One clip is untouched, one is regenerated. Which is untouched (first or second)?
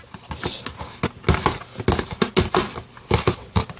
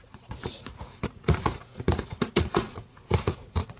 first